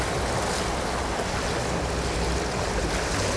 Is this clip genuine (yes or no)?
yes